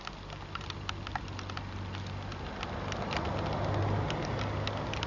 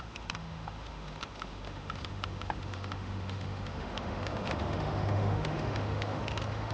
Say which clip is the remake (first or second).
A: second